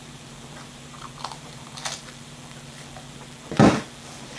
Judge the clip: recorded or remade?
remade